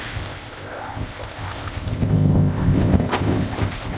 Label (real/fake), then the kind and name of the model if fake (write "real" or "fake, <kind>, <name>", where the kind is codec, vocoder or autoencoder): fake, codec, ZipCodec